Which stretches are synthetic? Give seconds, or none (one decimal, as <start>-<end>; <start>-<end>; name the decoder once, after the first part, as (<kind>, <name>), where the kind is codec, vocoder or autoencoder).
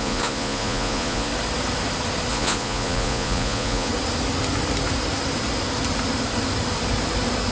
0.0-1.3 (vocoder, Vocos); 2.3-3.9